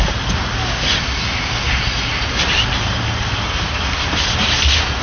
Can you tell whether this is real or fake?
real